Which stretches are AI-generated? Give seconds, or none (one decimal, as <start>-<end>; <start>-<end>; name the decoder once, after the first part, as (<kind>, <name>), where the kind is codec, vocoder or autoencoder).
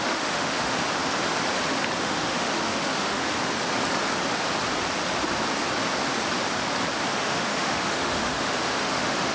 0.0-0.8 (autoencoder, DAC-VAE); 2.0-3.2; 7.1-9.3